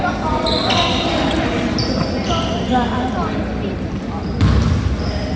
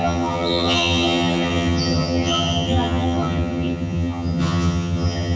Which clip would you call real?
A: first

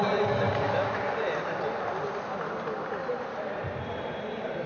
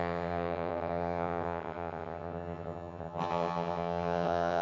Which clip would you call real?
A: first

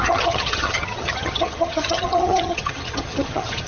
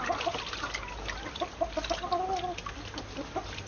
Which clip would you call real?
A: second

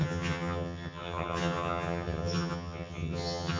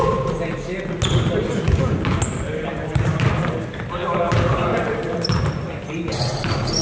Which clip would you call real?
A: second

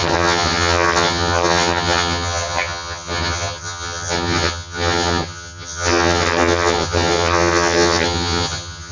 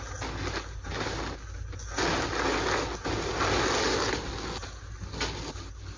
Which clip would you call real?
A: second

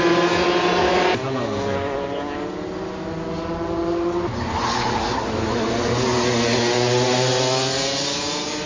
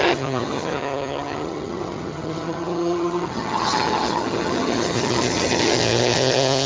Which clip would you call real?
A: first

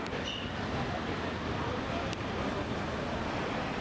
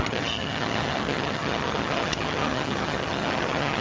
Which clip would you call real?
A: first